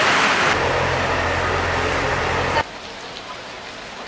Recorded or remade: recorded